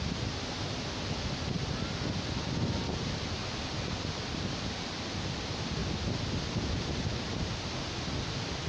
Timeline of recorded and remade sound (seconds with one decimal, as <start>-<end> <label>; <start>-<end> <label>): 0.0-5.8 recorded; 5.8-6.4 remade; 6.4-8.7 recorded